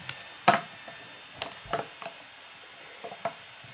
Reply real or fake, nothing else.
real